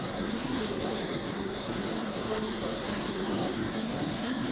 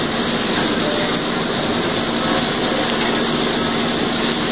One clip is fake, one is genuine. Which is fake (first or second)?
first